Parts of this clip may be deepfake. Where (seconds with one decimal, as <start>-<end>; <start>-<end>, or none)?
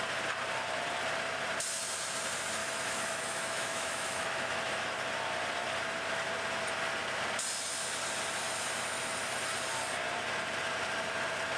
2.6-4.6